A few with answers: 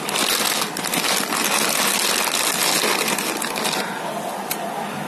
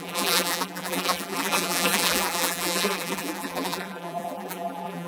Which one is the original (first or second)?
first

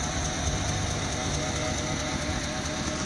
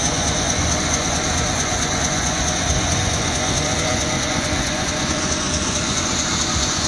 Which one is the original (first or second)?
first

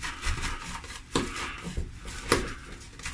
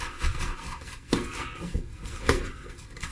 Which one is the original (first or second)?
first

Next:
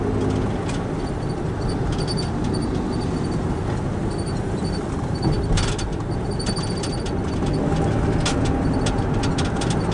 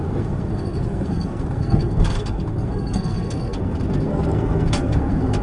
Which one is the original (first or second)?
first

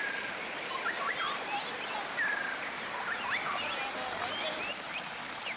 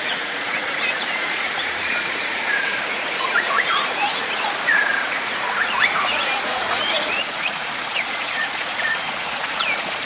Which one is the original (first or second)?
first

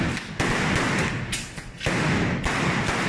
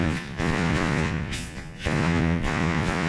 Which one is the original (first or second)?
first